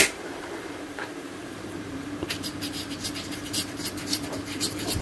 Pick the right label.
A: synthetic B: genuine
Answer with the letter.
A